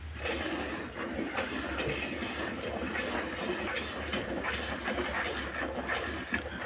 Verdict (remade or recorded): recorded